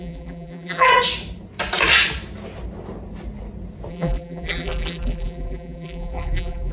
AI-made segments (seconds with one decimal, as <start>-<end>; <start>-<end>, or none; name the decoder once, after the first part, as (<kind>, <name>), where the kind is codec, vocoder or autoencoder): 0.0-0.9 (vocoder, BigVGAN v2); 3.9-6.7